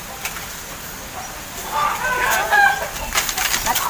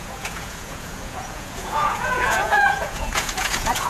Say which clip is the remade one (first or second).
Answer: second